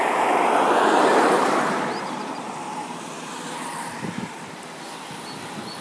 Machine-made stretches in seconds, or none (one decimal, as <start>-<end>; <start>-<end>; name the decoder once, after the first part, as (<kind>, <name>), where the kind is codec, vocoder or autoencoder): 1.1-4.6 (vocoder, BigVGAN v2)